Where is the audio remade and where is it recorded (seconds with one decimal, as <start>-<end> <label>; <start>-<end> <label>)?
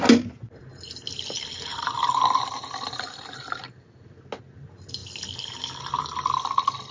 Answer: 0.0-6.9 recorded